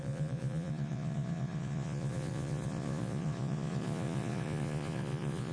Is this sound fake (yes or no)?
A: yes